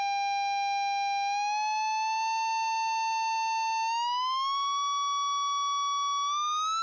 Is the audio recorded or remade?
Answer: recorded